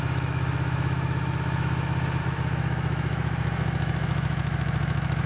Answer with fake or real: fake